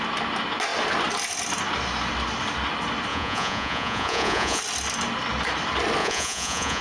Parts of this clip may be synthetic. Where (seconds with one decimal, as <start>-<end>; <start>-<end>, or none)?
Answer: 3.1-4.6; 6.0-6.8